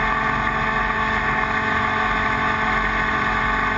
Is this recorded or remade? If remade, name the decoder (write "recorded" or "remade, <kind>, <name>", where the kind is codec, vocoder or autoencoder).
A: recorded